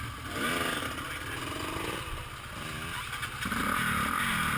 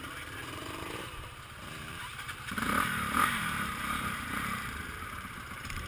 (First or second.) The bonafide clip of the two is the first